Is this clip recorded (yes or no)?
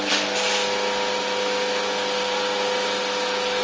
yes